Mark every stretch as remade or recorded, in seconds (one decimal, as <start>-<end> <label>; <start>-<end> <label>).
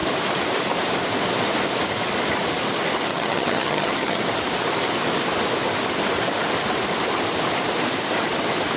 0.0-3.1 recorded; 3.1-4.2 remade; 4.2-8.8 recorded